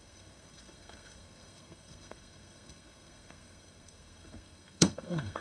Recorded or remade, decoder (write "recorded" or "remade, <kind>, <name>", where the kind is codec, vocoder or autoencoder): remade, codec, SNAC